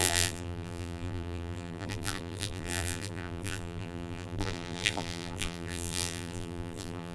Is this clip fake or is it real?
fake